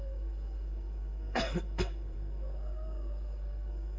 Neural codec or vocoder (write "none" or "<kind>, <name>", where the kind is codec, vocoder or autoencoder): codec, SNAC